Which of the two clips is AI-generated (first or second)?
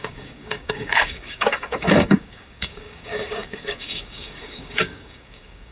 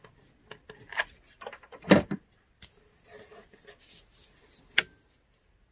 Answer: first